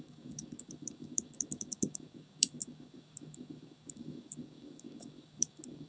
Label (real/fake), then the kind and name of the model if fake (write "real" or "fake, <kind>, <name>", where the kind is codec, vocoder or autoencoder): fake, codec, DAC